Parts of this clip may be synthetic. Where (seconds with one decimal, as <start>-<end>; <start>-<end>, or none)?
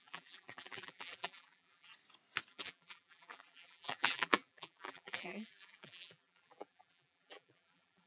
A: 0.0-1.9; 2.5-8.1